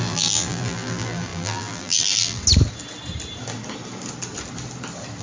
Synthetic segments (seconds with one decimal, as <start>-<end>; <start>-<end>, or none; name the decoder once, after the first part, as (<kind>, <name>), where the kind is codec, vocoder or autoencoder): 0.0-2.4 (vocoder, BigVGAN v2)